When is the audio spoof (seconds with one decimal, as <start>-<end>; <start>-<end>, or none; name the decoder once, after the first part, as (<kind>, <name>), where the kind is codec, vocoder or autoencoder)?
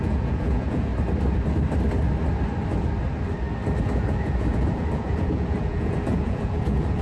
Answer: 0.0-0.9 (vocoder, Vocos); 3.8-7.0